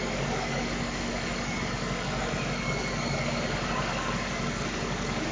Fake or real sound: fake